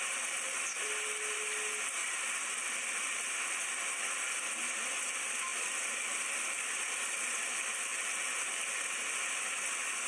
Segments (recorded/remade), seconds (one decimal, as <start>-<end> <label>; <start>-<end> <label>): 0.0-5.5 recorded; 5.5-6.3 remade; 6.3-7.9 recorded; 7.9-8.6 remade; 8.6-10.1 recorded